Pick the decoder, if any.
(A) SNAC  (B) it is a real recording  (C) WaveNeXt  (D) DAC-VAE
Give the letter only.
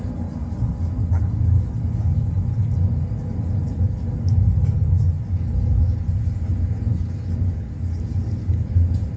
B